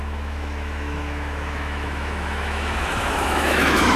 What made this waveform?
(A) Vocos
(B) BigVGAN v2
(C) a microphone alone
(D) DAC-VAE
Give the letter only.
D